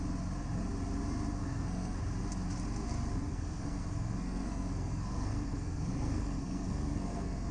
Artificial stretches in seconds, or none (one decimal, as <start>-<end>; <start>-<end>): 1.4-2.0; 3.3-7.5